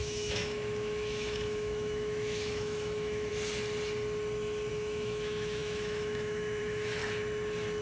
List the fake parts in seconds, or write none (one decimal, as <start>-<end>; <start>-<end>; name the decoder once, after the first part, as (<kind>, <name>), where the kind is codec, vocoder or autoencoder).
0.0-3.3 (autoencoder, DAC-VAE); 4.7-7.0